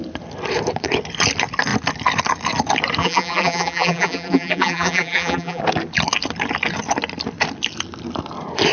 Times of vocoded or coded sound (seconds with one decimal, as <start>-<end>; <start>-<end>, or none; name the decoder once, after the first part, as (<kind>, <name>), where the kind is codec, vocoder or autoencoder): 3.0-5.6 (vocoder, BigVGAN v2)